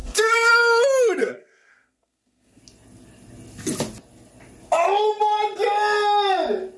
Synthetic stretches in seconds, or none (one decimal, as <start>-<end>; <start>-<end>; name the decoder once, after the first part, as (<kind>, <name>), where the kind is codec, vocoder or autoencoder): 0.0-0.5 (codec, SNAC); 1.2-2.6